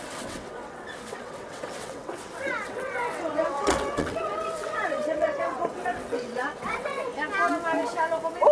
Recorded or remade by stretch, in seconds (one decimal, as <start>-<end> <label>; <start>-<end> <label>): 0.0-7.1 remade; 7.1-8.5 recorded